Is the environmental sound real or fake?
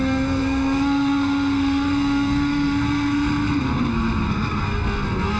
fake